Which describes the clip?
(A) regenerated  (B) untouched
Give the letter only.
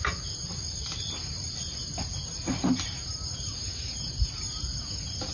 B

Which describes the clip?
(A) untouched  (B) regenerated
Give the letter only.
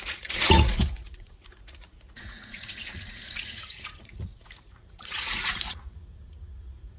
B